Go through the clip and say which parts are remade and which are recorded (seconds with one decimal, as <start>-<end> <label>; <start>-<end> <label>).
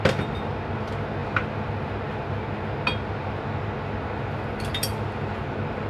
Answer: 0.0-5.9 recorded